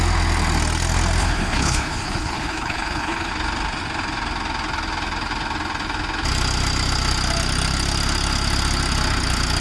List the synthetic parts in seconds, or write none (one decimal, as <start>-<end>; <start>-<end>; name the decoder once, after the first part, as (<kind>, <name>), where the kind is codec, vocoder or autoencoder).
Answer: 1.2-3.3 (codec, HILCodec)